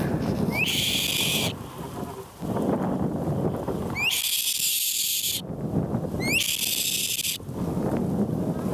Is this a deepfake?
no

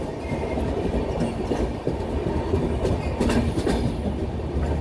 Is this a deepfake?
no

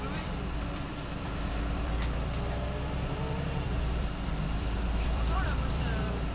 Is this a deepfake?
yes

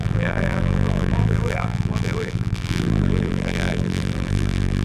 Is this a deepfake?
yes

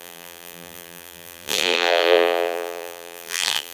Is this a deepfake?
yes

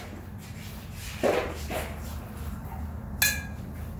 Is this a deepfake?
no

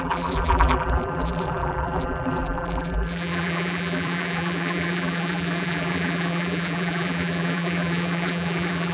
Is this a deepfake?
yes